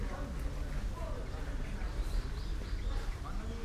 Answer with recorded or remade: recorded